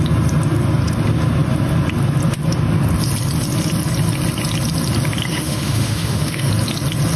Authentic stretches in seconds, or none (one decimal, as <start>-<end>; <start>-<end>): 0.0-5.3; 6.5-7.2